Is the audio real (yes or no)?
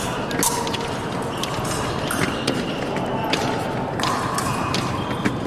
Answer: yes